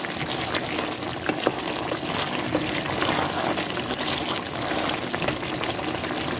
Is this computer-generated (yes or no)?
no